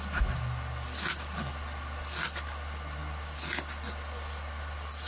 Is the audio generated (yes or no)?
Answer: no